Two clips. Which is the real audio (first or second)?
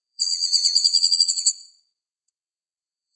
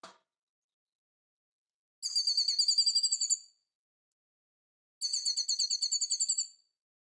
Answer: second